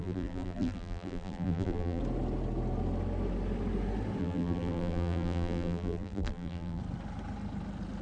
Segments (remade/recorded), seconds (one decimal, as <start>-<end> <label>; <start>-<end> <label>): 0.0-2.0 remade; 2.0-4.2 recorded; 4.2-6.8 remade; 6.8-8.0 recorded